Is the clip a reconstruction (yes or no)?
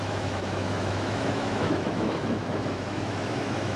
yes